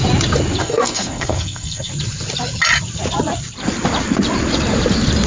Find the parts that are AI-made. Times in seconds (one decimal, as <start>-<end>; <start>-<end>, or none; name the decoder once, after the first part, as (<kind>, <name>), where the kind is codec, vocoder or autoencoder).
0.6-1.9 (codec, SNAC)